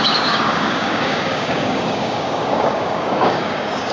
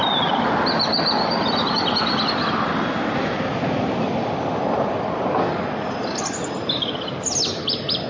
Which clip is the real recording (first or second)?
second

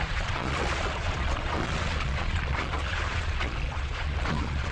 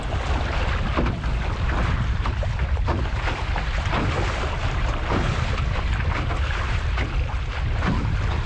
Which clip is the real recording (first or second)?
second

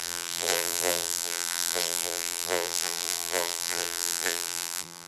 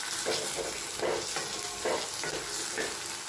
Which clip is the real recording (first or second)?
second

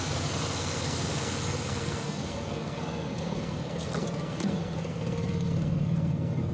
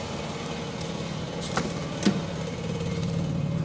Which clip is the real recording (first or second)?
second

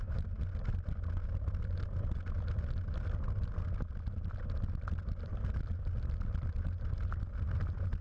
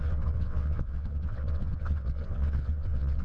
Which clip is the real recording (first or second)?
first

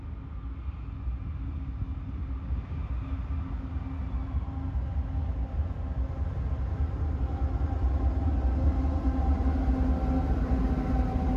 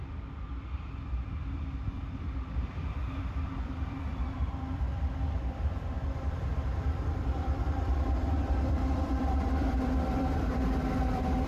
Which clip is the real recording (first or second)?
first